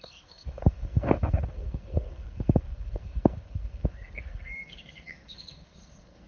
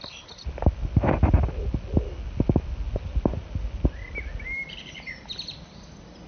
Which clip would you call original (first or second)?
second